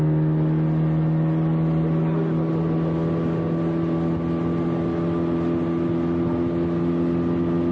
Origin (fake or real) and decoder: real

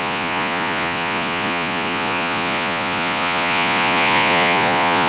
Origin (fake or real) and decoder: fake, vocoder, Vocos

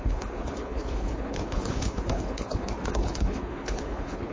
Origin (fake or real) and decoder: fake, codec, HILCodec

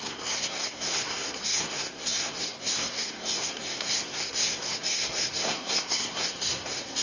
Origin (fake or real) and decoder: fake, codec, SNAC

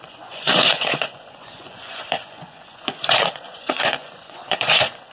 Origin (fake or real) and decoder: fake, vocoder, Vocos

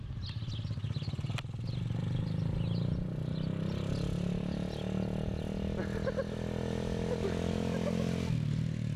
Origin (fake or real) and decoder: real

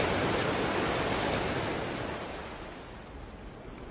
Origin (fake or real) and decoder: real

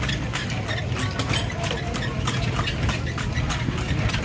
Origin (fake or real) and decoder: real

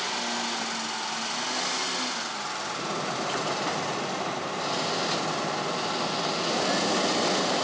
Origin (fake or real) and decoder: real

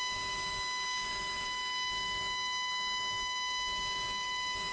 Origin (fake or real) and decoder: fake, autoencoder, DAC-VAE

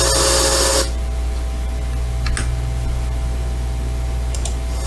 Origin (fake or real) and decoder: real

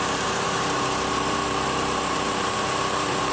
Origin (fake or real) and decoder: fake, vocoder, BigVGAN v2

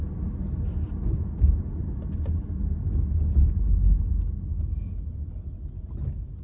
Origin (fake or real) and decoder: real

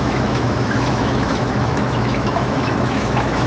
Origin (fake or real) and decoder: fake, autoencoder, DAC-VAE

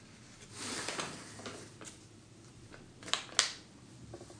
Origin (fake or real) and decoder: real